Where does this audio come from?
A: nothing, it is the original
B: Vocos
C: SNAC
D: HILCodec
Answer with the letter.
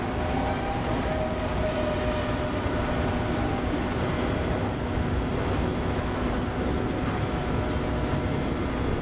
A